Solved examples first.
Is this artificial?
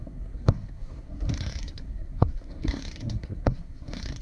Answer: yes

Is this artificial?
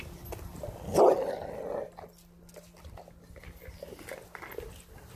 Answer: no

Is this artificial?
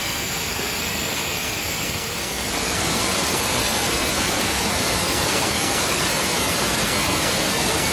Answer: yes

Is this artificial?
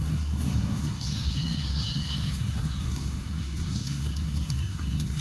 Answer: yes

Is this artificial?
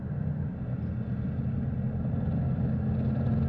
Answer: no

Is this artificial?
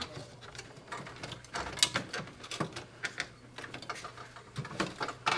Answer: no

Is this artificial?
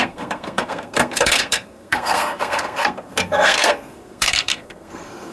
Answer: yes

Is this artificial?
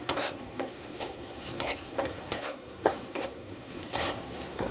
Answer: yes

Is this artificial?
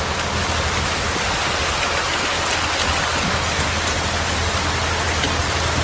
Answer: no